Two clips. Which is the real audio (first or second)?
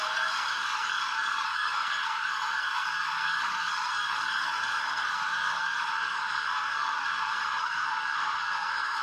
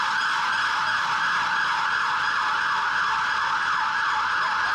second